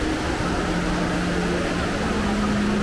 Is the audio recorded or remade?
recorded